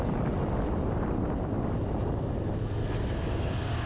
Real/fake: real